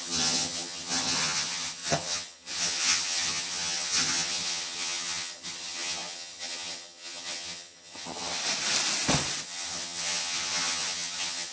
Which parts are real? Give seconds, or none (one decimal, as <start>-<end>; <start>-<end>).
8.4-9.4